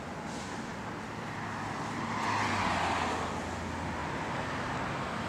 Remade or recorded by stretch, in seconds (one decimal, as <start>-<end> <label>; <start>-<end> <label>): 0.0-4.0 recorded; 4.0-5.3 remade